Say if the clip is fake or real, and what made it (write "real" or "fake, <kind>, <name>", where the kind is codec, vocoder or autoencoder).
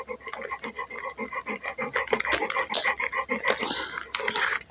real